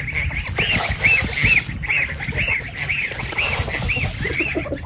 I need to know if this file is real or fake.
real